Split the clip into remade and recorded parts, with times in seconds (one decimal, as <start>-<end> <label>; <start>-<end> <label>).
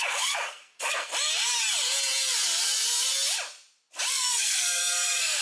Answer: 0.0-1.1 remade; 1.1-4.1 recorded; 4.1-5.4 remade